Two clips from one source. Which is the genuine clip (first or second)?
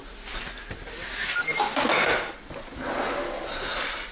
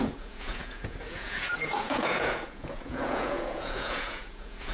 first